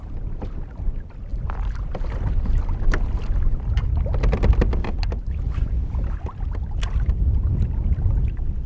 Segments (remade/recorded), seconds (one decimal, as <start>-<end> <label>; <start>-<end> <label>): 0.0-8.7 recorded